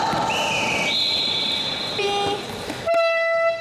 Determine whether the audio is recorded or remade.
recorded